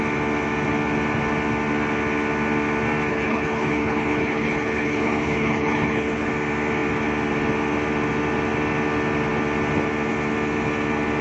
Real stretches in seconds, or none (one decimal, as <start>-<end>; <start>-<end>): 0.0-3.1; 6.3-11.2